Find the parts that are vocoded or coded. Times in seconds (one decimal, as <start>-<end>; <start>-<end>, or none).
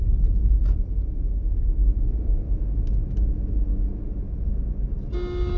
none